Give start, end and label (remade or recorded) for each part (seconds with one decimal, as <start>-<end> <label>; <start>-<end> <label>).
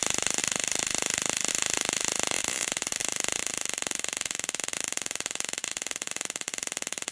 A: 0.0-7.1 remade